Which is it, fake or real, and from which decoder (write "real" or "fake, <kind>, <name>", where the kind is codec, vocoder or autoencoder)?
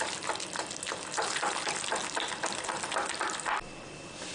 real